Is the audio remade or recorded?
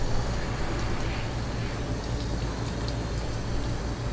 recorded